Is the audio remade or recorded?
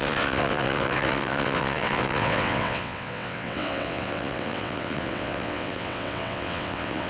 remade